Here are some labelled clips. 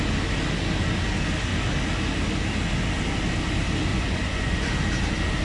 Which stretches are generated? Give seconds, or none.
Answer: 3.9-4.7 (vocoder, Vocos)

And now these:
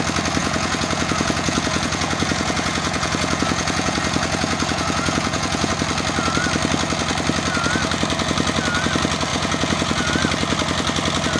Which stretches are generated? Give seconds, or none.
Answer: 0.4-5.7 (vocoder, Vocos); 9.3-10.1

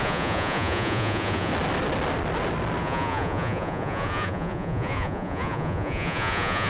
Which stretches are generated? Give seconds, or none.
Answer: 0.0-1.5 (vocoder, Vocos); 2.8-6.7

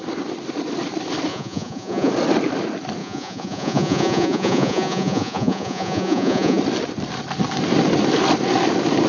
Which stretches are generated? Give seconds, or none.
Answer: 1.3-2.1 (vocoder, Vocos); 3.0-6.6